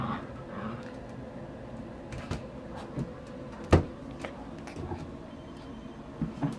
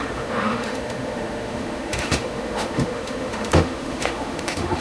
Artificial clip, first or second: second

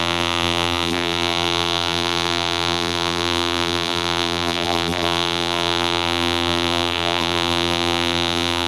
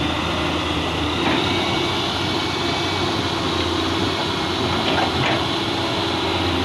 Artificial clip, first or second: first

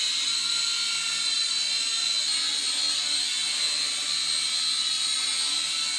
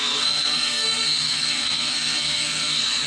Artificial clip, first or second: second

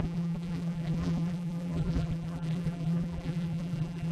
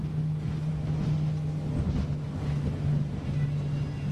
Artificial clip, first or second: first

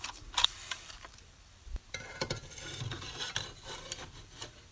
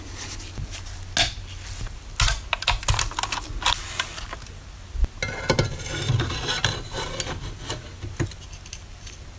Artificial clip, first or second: first